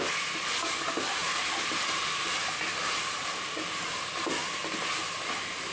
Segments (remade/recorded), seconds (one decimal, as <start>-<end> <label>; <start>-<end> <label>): 0.0-1.2 recorded; 1.2-4.0 remade; 4.0-5.7 recorded

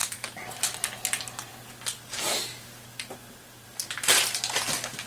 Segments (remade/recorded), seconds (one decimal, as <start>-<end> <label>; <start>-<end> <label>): 0.0-0.6 remade; 0.6-5.1 recorded

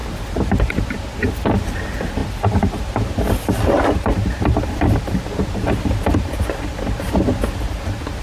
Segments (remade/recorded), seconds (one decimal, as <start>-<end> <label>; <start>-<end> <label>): 0.0-0.7 remade; 0.7-2.2 recorded; 2.2-7.1 remade; 7.1-8.2 recorded

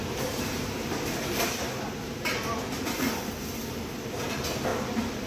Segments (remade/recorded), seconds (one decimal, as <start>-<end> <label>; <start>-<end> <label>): 0.0-3.2 remade; 3.2-4.7 recorded; 4.7-5.3 remade